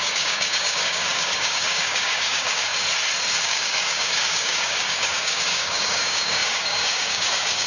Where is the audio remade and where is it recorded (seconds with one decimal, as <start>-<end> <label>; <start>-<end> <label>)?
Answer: 0.0-2.7 remade; 2.7-3.4 recorded; 3.4-7.7 remade